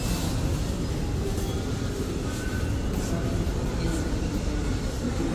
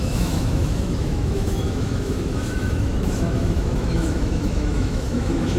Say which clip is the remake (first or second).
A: second